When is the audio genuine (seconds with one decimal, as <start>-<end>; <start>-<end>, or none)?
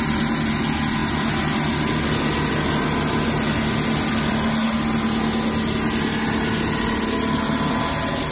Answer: 0.0-8.3